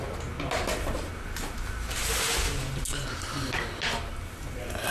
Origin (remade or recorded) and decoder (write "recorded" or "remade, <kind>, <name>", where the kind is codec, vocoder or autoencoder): recorded